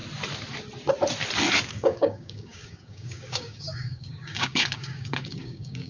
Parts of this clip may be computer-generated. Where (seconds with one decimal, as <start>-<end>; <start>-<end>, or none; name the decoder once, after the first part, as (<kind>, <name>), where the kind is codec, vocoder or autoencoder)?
1.7-5.9 (codec, DAC)